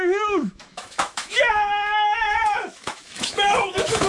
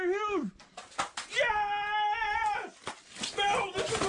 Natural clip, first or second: second